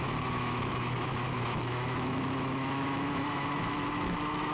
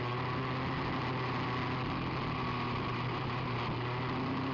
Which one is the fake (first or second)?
first